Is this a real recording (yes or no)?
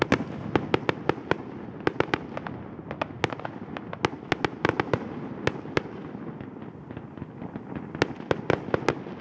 yes